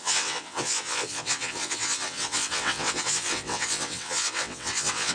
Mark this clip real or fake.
fake